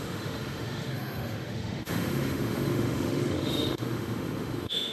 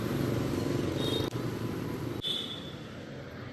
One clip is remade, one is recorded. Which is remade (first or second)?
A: first